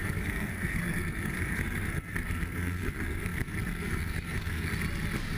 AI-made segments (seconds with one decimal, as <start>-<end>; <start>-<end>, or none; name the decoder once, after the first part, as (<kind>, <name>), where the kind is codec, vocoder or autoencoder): 0.0-4.7 (codec, SNAC)